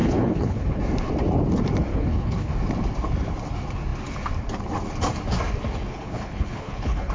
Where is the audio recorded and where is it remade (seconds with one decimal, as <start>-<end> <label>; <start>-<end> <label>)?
0.0-0.8 remade; 0.8-1.9 recorded; 1.9-2.5 remade; 2.5-5.9 recorded; 5.9-7.1 remade